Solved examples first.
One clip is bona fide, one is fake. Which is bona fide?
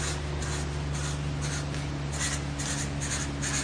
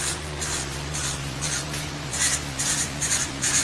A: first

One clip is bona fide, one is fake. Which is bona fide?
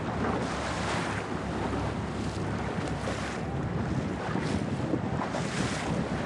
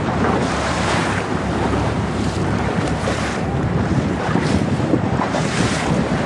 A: first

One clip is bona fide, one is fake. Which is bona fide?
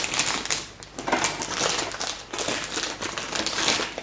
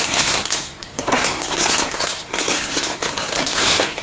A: first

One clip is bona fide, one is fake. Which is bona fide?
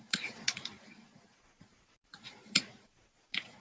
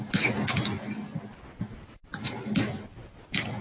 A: second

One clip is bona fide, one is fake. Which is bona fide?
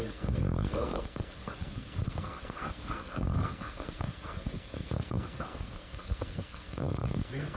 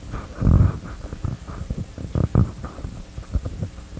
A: second